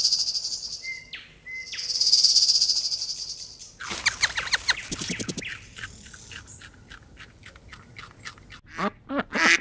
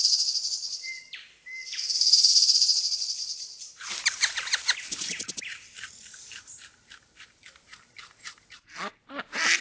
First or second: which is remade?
second